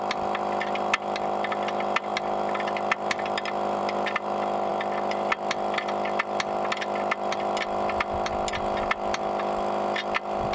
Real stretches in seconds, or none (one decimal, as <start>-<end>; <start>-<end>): 0.0-10.5